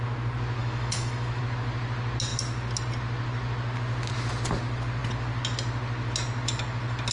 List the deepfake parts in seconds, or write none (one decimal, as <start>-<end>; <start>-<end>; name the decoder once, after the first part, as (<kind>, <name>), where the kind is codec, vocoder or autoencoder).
0.6-1.4 (autoencoder, DAC-VAE)